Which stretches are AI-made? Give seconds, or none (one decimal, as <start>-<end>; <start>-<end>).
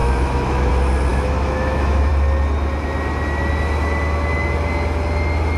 0.0-0.7; 1.1-2.1